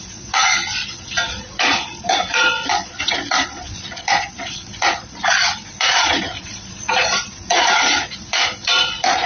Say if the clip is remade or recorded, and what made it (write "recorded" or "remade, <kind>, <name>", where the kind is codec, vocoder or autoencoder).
remade, vocoder, Vocos